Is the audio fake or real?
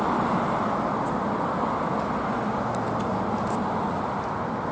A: real